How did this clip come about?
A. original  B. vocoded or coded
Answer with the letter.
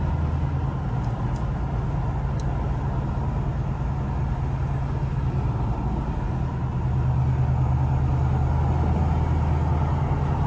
A